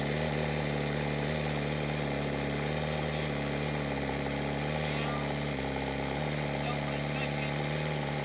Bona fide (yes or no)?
yes